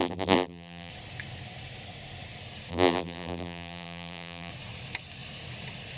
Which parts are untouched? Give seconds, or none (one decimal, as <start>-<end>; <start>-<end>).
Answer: 0.9-2.7; 4.5-6.0